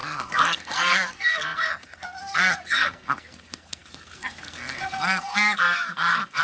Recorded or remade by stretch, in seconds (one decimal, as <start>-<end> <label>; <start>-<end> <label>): 0.0-6.4 remade